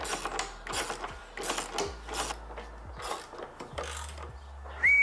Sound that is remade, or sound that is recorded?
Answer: recorded